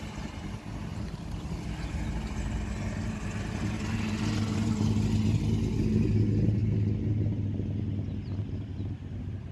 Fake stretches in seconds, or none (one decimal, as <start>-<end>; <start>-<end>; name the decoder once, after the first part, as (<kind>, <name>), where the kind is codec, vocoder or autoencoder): none